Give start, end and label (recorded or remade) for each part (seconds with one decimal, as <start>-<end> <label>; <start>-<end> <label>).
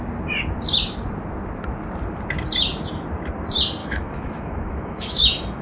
0.0-3.8 recorded; 3.8-5.6 remade